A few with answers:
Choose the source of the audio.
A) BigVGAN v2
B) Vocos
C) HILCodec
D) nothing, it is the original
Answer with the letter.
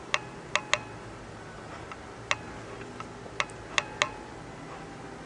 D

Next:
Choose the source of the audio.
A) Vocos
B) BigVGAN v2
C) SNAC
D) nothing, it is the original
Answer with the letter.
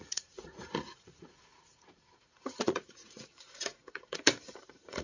A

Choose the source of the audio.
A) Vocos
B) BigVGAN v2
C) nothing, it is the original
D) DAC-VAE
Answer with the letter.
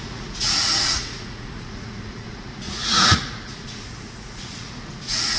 A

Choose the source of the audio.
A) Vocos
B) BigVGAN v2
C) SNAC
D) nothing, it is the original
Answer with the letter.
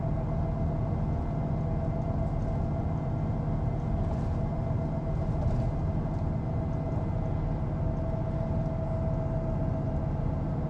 D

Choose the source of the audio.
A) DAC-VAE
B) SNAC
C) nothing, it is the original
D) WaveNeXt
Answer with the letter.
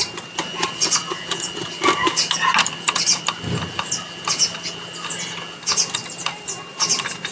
C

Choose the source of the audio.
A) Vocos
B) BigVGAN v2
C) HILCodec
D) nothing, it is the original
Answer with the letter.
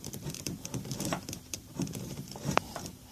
B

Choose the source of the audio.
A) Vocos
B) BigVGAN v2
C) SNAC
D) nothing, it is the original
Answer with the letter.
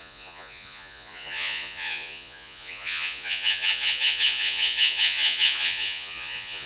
A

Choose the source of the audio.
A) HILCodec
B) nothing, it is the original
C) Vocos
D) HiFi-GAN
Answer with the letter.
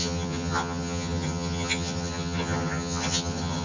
D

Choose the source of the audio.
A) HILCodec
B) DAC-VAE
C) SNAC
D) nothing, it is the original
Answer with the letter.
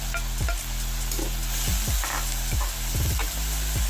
D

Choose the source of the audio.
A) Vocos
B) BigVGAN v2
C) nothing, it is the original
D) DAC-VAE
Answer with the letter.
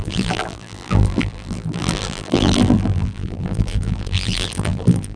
B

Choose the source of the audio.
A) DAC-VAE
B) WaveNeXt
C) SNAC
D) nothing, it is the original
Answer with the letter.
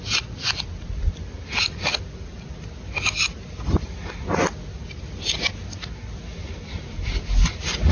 D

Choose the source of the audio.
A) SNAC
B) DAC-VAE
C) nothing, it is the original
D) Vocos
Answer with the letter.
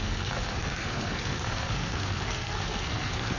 A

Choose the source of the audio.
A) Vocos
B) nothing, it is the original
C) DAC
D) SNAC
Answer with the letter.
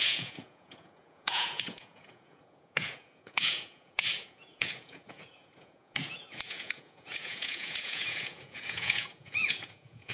A